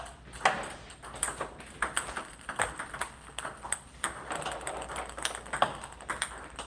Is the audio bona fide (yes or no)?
yes